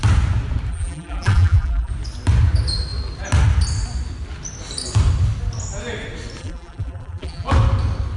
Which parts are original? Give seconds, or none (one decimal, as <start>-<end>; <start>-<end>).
0.0-0.7; 1.9-6.4; 7.5-8.2